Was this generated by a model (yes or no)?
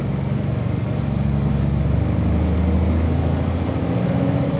yes